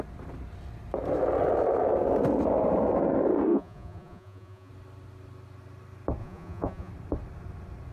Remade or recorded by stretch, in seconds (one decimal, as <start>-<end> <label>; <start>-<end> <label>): 0.0-3.5 recorded; 3.5-4.7 remade; 4.7-6.2 recorded; 6.2-6.9 remade; 6.9-7.9 recorded